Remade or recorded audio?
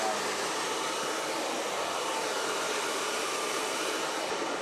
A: recorded